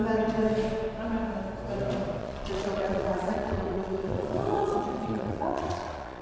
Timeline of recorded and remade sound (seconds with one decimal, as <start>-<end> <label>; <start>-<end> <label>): 0.0-2.2 recorded; 2.2-6.2 remade